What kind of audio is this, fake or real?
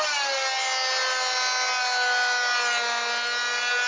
real